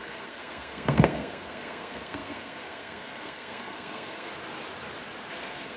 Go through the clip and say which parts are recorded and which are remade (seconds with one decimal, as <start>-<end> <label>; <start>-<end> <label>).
0.0-4.3 remade; 4.3-5.3 recorded; 5.3-5.8 remade